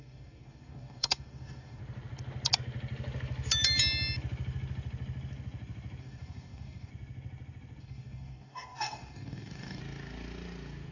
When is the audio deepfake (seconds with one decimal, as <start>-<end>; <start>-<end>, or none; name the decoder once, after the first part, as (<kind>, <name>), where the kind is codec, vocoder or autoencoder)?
0.0-1.8 (codec, DAC); 6.0-6.9; 7.8-9.8